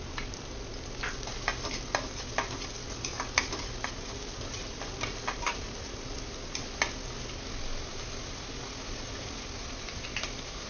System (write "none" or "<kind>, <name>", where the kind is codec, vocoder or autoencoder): none